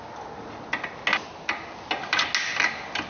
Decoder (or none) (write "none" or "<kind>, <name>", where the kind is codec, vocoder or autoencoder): none